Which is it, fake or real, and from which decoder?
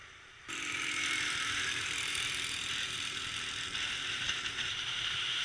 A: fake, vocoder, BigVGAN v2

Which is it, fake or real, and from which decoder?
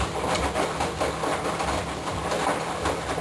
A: real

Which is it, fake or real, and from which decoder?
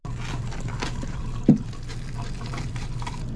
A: fake, vocoder, BigVGAN v2